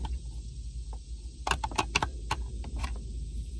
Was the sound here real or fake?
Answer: real